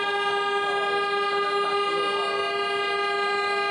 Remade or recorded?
recorded